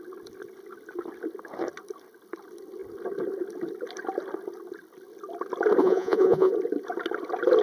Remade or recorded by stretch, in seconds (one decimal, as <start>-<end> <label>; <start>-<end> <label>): 0.0-5.8 recorded; 5.8-6.5 remade; 6.5-7.6 recorded